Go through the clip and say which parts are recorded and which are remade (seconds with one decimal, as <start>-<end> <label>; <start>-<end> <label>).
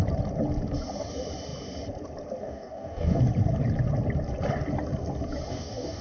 0.0-2.4 recorded; 2.4-3.2 remade; 3.2-5.5 recorded; 5.5-6.0 remade